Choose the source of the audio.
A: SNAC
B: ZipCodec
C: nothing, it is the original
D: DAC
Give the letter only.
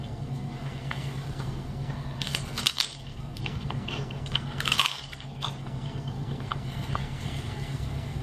A